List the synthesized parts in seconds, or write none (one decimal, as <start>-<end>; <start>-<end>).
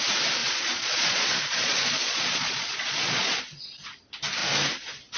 0.4-3.4